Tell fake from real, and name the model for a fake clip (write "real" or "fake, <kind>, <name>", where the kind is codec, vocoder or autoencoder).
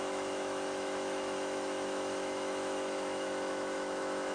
fake, autoencoder, DAC-VAE